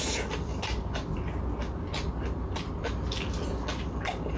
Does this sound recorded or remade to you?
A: recorded